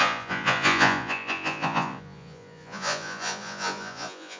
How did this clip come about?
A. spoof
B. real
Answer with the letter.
A